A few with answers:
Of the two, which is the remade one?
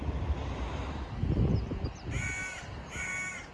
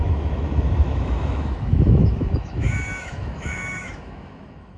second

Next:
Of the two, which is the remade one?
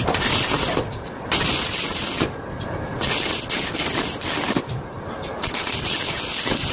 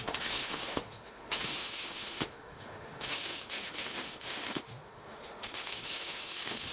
second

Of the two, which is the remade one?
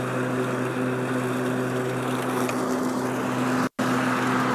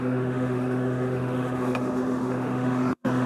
second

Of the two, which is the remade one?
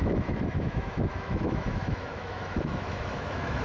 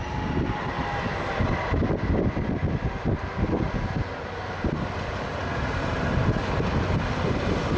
first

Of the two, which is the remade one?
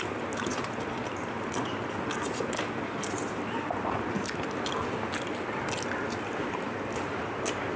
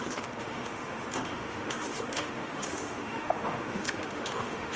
second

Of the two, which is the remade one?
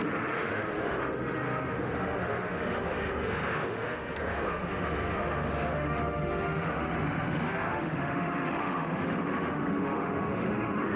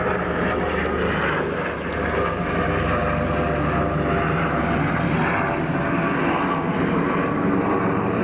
first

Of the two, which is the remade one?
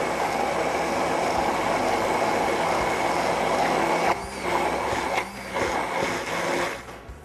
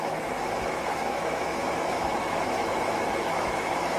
second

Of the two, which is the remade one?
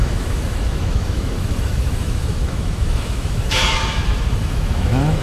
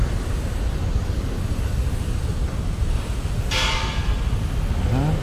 first